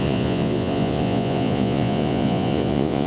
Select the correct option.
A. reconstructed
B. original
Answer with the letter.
A